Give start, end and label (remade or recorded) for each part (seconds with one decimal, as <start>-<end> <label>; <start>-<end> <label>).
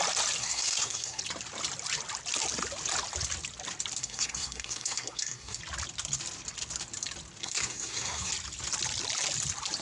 0.0-0.4 recorded; 0.4-1.2 remade; 1.2-4.0 recorded; 4.0-5.6 remade; 5.6-7.4 recorded; 7.4-8.3 remade; 8.3-9.8 recorded